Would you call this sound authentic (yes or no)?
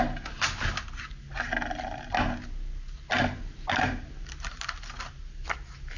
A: yes